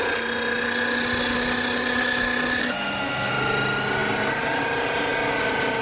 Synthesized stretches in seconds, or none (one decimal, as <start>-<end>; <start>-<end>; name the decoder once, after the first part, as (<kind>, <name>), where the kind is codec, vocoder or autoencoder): 2.6-3.3 (codec, SNAC)